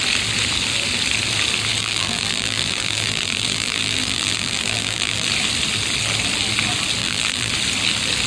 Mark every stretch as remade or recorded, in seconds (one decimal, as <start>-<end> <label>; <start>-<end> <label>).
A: 0.0-1.8 recorded; 1.8-5.3 remade; 5.3-7.0 recorded; 7.0-7.5 remade; 7.5-8.3 recorded